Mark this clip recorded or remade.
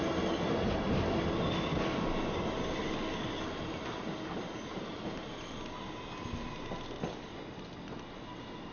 recorded